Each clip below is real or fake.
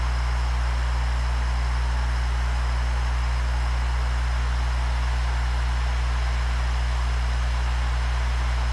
real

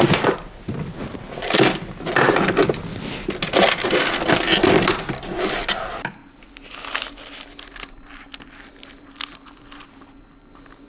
real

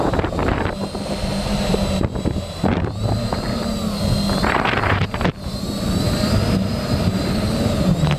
fake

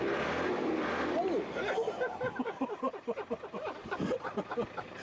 fake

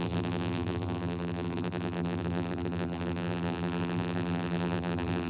fake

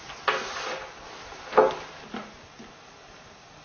real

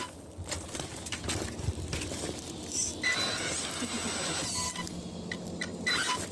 real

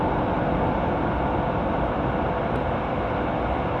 real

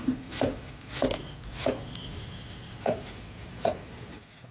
real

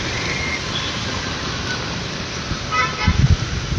fake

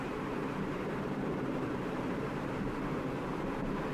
fake